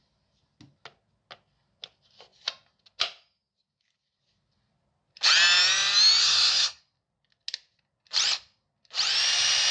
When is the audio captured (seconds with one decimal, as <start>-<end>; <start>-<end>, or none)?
0.0-6.2; 6.8-9.7